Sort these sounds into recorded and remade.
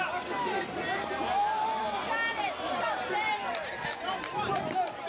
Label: recorded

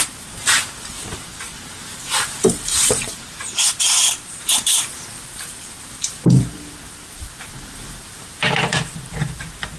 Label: remade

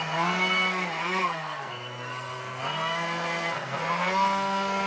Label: remade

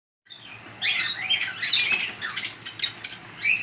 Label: recorded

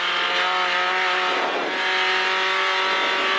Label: recorded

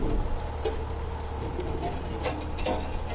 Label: recorded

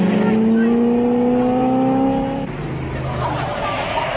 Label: recorded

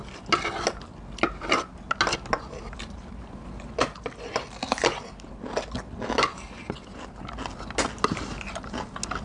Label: recorded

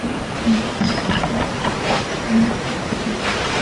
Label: remade